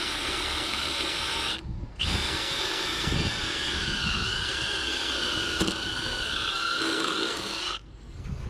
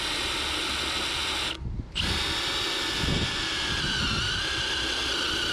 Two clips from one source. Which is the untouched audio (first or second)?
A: second